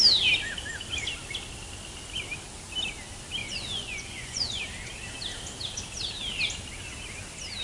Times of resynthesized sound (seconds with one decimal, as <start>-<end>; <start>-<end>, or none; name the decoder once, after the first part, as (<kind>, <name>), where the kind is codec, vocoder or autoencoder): 3.4-4.6 (vocoder, Vocos)